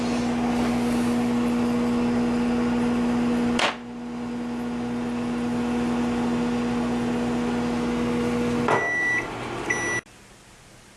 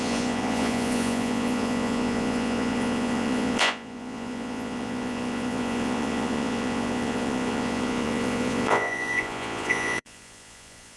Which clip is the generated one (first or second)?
second